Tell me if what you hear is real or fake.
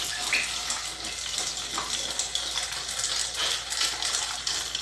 real